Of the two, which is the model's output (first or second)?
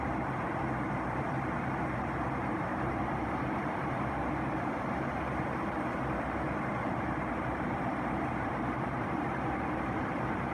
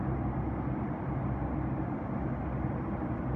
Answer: first